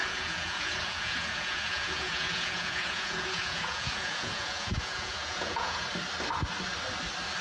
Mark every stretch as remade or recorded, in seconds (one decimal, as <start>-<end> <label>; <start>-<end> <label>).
0.0-5.9 remade; 5.9-7.4 recorded